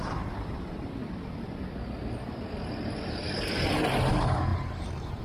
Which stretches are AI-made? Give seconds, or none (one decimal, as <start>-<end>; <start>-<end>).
0.0-1.0; 4.1-5.2